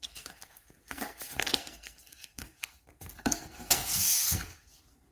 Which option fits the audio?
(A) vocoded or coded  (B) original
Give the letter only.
A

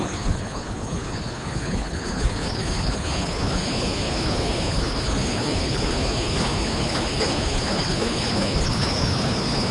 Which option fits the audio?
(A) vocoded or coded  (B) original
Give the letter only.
A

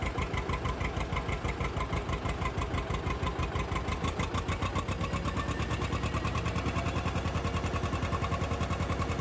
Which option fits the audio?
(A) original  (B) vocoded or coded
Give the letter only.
A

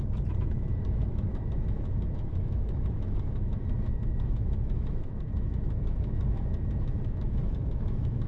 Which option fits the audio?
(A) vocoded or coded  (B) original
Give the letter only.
A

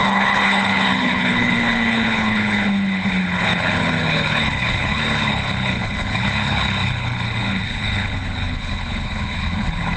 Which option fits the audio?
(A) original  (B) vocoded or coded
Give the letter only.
B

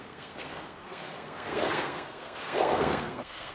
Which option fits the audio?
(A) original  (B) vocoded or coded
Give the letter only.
B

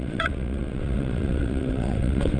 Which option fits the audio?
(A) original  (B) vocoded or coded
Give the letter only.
B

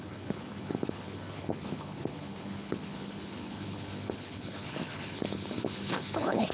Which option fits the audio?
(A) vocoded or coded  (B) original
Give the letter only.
A